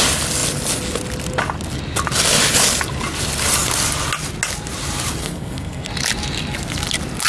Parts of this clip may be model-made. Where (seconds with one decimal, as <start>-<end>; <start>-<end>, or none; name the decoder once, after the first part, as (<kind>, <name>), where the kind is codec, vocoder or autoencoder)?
5.2-5.9 (codec, SNAC)

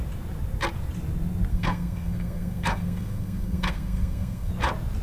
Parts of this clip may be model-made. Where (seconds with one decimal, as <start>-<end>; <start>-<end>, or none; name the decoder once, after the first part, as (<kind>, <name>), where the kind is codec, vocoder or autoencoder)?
1.5-4.5 (codec, SNAC)

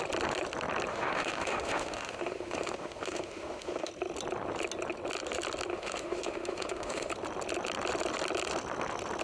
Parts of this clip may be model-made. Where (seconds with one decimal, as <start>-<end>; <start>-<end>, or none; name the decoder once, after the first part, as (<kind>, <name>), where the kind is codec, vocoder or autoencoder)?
0.9-3.9 (autoencoder, DAC-VAE); 5.7-7.1

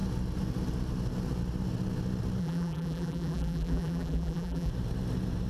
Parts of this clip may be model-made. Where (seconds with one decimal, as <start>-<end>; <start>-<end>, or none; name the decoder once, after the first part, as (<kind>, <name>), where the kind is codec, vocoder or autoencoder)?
2.4-4.7 (vocoder, BigVGAN v2)

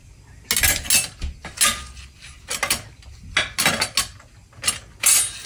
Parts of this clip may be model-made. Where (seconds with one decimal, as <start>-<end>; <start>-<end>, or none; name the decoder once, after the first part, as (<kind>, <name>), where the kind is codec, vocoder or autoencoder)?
none

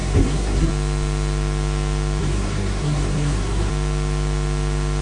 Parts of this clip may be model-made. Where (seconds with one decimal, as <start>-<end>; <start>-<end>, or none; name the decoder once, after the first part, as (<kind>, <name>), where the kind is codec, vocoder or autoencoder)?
0.0-0.7 (codec, SNAC); 2.2-3.7

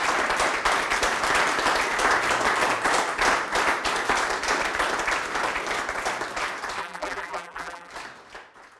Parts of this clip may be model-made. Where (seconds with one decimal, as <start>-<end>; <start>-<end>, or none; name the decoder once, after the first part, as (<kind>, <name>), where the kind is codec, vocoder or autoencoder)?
6.8-7.9 (vocoder, BigVGAN v2)